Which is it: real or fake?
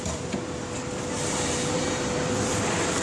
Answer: fake